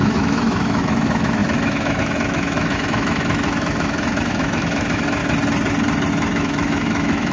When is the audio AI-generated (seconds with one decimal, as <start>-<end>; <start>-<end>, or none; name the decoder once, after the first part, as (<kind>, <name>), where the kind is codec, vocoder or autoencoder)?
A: 0.0-5.2 (autoencoder, DAC-VAE); 6.1-7.3